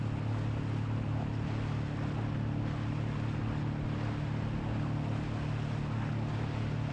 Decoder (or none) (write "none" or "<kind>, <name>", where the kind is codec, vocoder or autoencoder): none